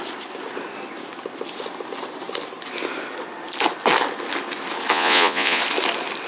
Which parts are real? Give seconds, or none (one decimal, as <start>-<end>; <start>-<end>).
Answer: 0.0-4.9; 5.6-6.3